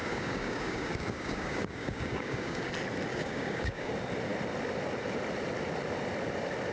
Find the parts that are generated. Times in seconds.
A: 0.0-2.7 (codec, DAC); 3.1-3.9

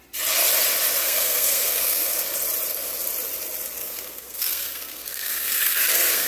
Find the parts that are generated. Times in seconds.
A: 1.0-2.2 (codec, SNAC); 3.8-6.3

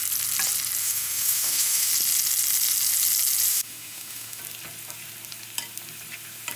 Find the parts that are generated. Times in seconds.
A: 0.8-1.9 (autoencoder, DAC-VAE); 3.5-4.4

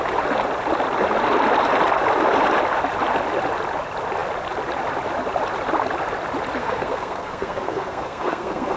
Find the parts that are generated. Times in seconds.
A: 6.6-8.8 (codec, SNAC)

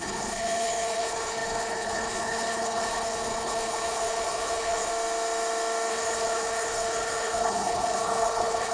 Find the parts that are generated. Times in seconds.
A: 0.0-4.9 (codec, HILCodec); 5.9-8.7

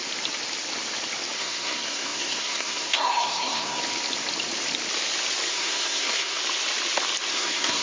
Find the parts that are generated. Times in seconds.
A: 1.4-3.8 (codec, SNAC); 5.5-6.4; 7.3-7.8